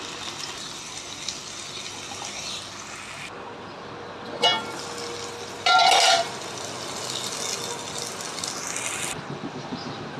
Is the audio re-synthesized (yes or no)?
no